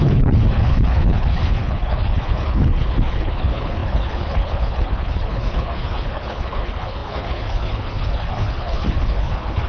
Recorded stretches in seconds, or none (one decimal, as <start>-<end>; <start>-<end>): none